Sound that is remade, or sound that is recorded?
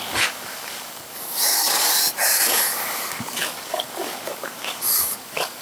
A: remade